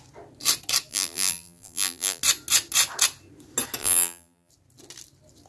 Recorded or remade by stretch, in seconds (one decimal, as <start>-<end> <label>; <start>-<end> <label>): 0.0-0.9 recorded; 0.9-2.2 remade; 2.2-3.8 recorded; 3.8-4.5 remade; 4.5-5.5 recorded